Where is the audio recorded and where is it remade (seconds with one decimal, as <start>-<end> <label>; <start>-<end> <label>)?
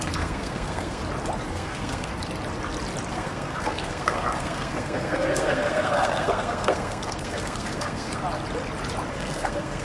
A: 0.0-1.0 remade; 1.0-1.5 recorded; 1.5-2.1 remade; 2.1-3.1 recorded; 3.1-8.2 remade; 8.2-9.1 recorded; 9.1-9.8 remade